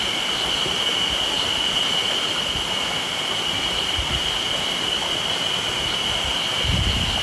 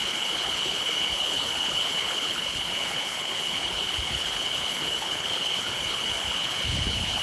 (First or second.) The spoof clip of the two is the second